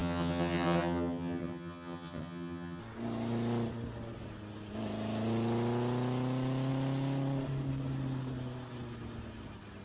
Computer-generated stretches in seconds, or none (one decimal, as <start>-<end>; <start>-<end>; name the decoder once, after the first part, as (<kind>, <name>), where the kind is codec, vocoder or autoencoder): 0.0-2.8 (vocoder, HiFi-GAN)